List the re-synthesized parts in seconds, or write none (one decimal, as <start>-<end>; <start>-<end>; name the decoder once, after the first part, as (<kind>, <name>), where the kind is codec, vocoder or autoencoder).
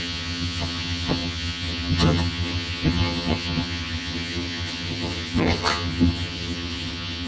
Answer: 0.0-7.3 (vocoder, HiFi-GAN)